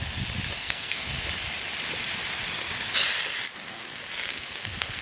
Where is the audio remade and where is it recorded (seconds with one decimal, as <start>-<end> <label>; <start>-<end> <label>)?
0.0-0.6 recorded; 0.6-1.1 remade; 1.1-4.3 recorded; 4.3-5.0 remade